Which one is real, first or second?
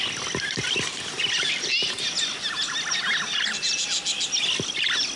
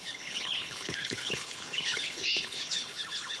first